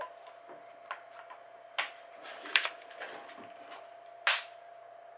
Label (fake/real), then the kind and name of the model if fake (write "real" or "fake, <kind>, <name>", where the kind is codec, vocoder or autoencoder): real